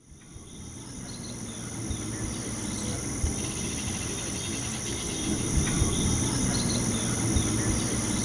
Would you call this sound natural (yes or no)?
yes